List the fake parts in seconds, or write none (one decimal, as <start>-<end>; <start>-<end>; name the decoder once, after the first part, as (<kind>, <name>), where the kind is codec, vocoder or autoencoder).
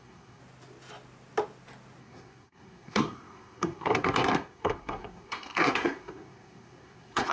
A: 0.0-0.4 (codec, SNAC); 2.0-7.3